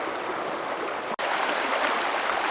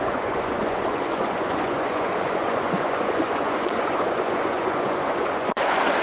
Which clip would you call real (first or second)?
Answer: first